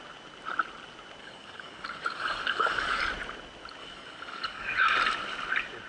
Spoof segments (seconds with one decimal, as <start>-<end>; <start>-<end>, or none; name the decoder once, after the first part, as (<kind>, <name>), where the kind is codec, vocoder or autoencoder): 1.2-3.0 (codec, DAC); 3.8-4.7